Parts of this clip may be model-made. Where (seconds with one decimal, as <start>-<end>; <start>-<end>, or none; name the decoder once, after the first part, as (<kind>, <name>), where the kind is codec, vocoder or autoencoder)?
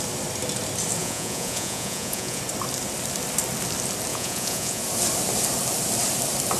1.0-2.4 (vocoder, Vocos); 4.1-4.8